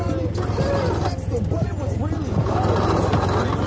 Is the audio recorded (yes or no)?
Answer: yes